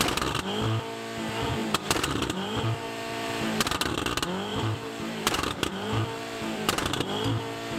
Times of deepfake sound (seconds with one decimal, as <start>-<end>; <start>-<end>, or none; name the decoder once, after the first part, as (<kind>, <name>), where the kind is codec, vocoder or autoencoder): 1.6-3.6 (vocoder, BigVGAN v2); 4.5-7.0